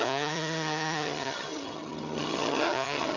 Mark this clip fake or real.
fake